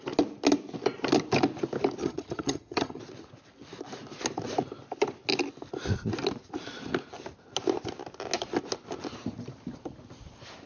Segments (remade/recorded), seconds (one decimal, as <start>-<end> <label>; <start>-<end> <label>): 0.0-2.0 recorded; 2.0-3.0 remade; 3.0-10.7 recorded